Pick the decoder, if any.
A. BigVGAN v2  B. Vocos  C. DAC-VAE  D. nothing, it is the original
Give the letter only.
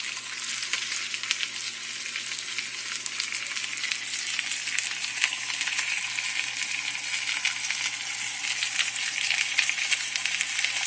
D